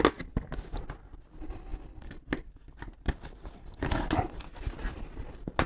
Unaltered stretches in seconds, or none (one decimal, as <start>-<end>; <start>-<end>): 0.0-5.7

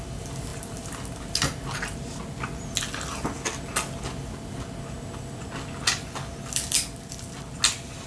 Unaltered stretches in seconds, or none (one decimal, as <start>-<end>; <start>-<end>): 0.0-8.1

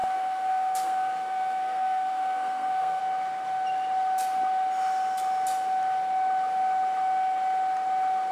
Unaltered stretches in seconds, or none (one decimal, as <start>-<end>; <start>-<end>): 3.0-8.3

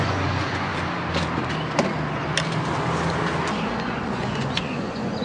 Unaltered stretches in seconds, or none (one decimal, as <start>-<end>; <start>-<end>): 0.7-3.8

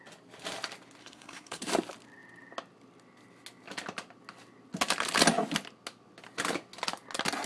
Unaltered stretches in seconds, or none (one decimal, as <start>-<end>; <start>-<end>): 0.0-1.0; 1.7-7.5

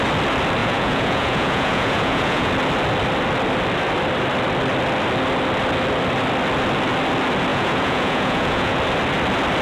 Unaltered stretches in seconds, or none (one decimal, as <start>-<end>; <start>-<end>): 0.0-0.6; 2.5-7.5; 8.8-9.6

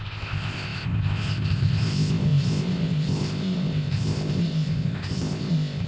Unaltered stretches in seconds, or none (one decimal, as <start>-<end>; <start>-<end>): none